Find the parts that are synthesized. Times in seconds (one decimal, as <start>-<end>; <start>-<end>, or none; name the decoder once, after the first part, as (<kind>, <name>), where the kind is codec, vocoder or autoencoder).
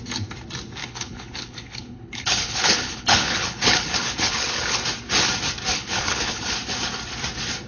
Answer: 0.8-4.8 (codec, HILCodec); 5.7-6.5